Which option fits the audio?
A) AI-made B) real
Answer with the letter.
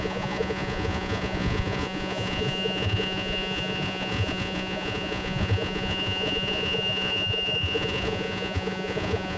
A